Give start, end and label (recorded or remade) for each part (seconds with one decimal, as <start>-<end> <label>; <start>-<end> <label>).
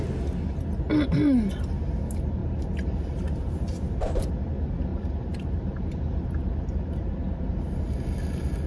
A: 0.0-2.4 recorded; 2.4-4.3 remade; 4.3-4.9 recorded; 4.9-5.9 remade; 5.9-8.7 recorded